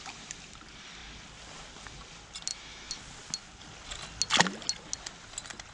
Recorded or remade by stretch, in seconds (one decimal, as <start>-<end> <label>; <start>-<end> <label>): 0.0-2.5 recorded; 2.5-3.0 remade; 3.0-5.7 recorded